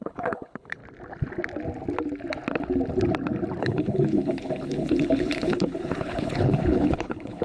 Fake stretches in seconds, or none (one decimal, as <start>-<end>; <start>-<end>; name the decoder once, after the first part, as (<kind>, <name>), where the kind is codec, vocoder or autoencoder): 0.0-0.8 (codec, HILCodec); 3.6-7.4